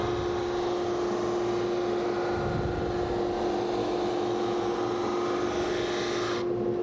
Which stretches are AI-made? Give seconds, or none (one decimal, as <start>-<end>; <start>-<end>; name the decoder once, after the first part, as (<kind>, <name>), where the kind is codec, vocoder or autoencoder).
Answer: 3.8-4.6 (autoencoder, DAC-VAE)